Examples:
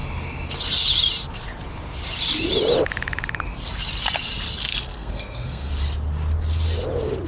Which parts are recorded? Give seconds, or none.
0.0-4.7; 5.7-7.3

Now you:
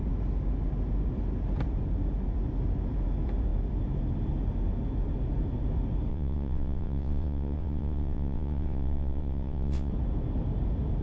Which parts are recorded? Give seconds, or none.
0.0-6.1; 9.9-11.0

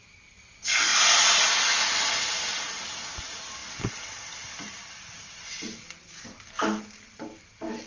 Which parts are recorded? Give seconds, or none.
0.9-1.9